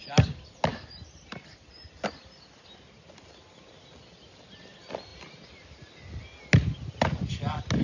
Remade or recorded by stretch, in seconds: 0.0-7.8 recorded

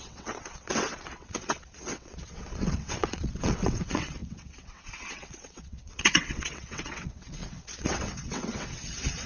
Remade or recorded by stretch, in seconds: 0.0-9.3 remade

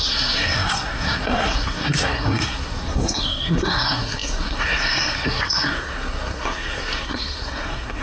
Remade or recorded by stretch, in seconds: 0.0-8.0 remade

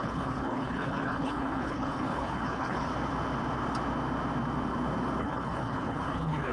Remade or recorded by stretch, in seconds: 0.0-2.9 remade; 2.9-5.2 recorded; 5.2-6.5 remade

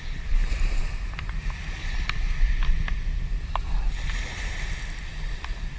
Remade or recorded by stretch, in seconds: 0.0-5.8 recorded